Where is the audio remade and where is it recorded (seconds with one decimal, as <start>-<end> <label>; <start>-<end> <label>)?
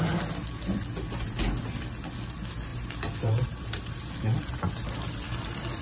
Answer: 0.0-2.7 recorded; 2.7-4.7 remade; 4.7-5.8 recorded